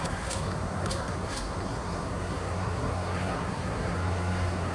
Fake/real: fake